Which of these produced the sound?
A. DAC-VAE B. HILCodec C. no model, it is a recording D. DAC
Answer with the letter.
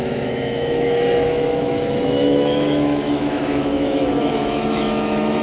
A